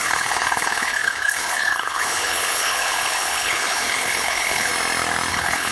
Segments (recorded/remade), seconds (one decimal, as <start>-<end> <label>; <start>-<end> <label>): 0.0-4.7 remade; 4.7-5.3 recorded; 5.3-5.7 remade